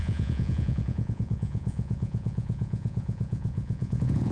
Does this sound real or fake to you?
fake